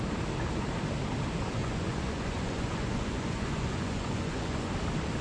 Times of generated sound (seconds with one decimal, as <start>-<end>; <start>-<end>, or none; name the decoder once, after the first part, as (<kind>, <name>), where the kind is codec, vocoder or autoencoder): 1.6-4.7 (vocoder, Vocos)